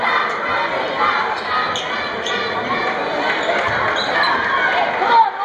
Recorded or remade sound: recorded